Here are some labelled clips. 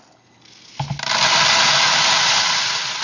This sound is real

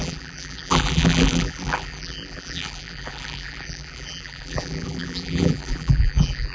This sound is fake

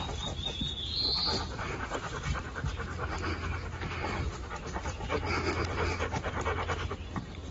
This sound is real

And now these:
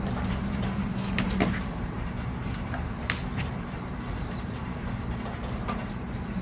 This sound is fake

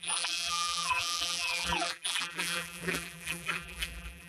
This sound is fake